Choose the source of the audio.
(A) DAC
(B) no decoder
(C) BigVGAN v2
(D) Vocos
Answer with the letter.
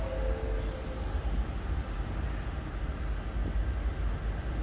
B